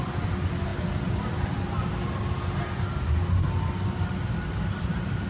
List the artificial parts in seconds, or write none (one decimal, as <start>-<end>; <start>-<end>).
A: none